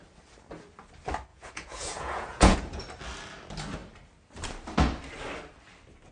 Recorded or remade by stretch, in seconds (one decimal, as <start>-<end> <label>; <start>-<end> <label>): 0.0-1.3 recorded; 1.3-2.8 remade; 2.8-6.1 recorded